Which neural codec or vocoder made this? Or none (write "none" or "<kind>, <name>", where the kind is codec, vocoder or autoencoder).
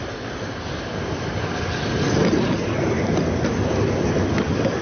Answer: none